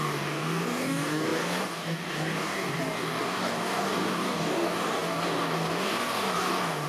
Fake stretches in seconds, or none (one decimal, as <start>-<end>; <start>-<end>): 0.0-6.9